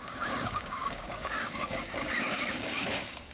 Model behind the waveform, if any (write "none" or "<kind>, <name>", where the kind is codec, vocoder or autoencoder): codec, DAC